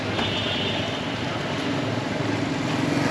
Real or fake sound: real